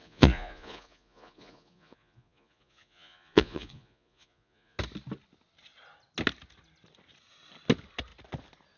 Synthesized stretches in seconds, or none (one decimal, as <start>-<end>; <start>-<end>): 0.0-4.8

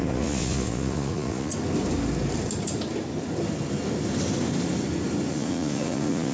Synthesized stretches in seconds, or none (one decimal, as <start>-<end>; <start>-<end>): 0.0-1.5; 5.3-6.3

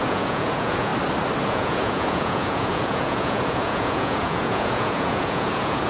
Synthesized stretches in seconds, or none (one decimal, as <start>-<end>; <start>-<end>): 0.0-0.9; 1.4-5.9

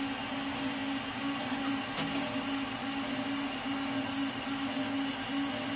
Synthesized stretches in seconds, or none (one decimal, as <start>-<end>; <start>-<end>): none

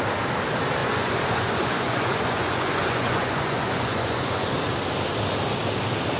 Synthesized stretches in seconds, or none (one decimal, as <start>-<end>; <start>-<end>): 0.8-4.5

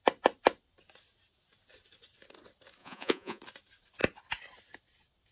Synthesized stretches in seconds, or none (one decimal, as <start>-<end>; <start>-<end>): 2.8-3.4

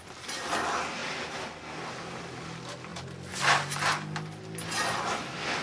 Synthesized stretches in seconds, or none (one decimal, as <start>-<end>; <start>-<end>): none

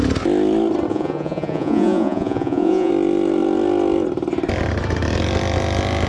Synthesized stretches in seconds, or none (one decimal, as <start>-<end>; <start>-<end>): 0.9-2.9